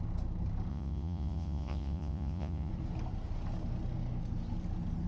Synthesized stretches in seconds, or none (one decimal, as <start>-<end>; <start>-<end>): 0.7-2.7